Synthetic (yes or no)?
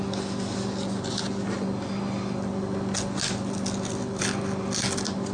no